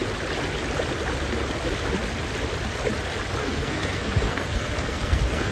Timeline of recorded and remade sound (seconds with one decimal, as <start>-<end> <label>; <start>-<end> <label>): 0.0-3.4 recorded; 3.4-5.5 remade